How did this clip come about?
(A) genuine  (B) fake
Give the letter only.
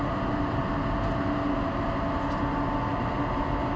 A